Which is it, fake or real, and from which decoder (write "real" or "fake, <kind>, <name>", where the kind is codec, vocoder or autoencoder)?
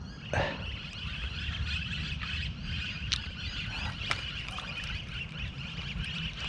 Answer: real